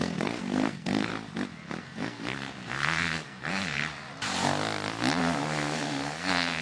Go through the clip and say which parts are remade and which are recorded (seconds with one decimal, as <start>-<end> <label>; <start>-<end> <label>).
0.0-1.1 remade; 1.1-1.8 recorded; 1.8-3.8 remade; 3.8-5.2 recorded; 5.2-6.6 remade